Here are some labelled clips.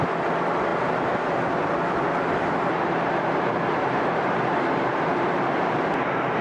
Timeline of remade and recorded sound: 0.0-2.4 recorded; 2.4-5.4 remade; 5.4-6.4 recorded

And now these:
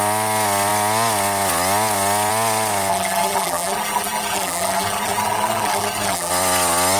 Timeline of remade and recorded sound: 0.0-2.9 recorded; 2.9-6.3 remade; 6.3-7.0 recorded

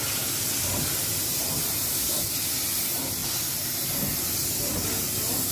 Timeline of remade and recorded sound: 0.0-5.5 recorded

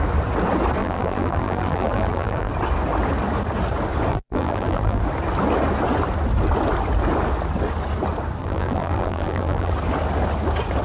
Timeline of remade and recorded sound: 0.0-0.8 recorded; 0.8-2.5 remade; 2.5-4.1 recorded; 4.1-5.0 remade; 5.0-8.4 recorded; 8.4-9.7 remade; 9.7-10.8 recorded

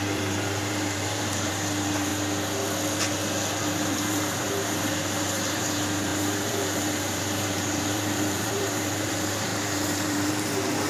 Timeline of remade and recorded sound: 0.0-2.1 remade; 2.1-3.6 recorded; 3.6-10.9 remade

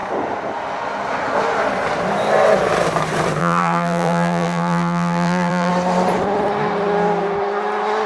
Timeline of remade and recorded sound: 0.0-3.4 recorded; 3.4-5.7 remade; 5.7-8.1 recorded